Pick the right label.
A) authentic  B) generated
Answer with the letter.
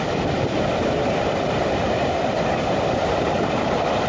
B